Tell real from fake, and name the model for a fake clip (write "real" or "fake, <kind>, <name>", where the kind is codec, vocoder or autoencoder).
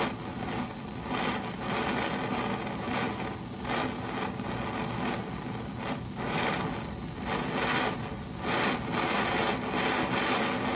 real